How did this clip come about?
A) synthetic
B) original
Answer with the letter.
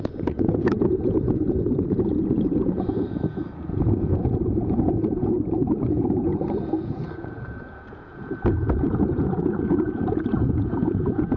A